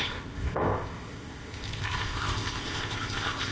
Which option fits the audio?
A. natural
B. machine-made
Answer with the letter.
B